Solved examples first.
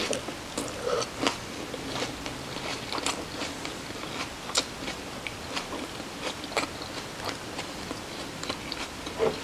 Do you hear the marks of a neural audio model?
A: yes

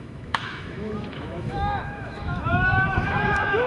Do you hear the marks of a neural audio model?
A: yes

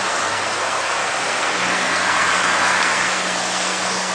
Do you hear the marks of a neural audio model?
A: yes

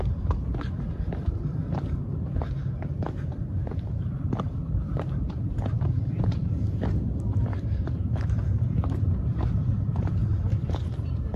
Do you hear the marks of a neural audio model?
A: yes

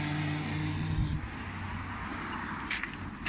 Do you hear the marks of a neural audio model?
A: no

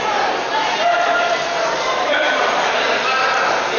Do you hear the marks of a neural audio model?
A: yes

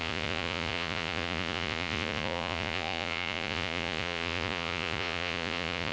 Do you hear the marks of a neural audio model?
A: yes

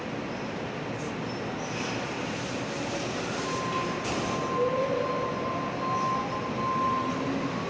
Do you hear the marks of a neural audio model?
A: no